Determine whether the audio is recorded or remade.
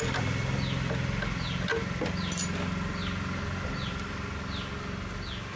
recorded